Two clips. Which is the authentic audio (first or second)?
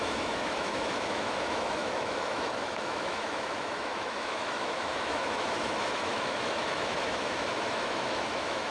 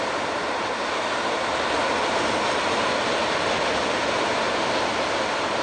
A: second